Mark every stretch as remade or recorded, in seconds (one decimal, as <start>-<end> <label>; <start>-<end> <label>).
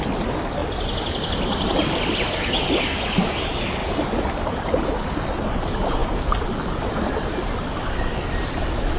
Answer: 0.0-3.8 recorded; 3.8-4.9 remade; 4.9-9.0 recorded